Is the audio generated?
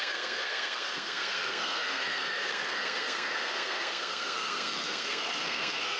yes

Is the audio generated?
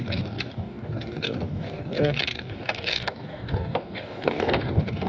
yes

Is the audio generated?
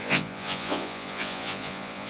yes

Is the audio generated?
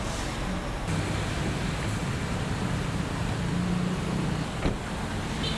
no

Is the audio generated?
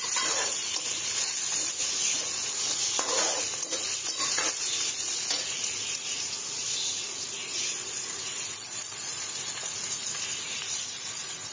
yes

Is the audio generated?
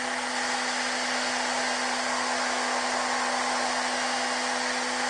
no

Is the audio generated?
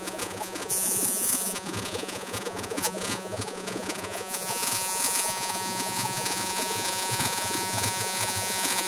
yes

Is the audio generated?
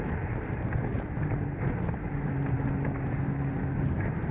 no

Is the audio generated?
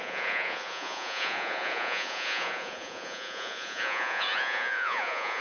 yes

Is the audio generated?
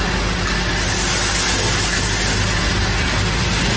no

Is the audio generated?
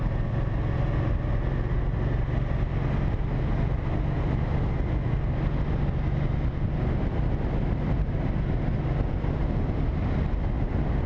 no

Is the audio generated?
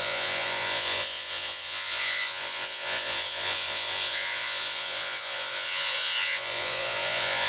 yes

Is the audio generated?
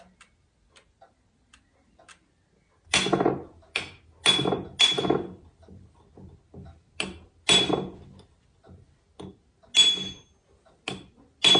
no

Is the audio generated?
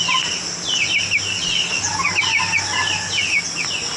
no